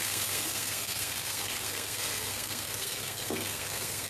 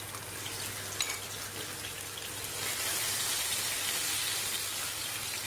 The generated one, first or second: first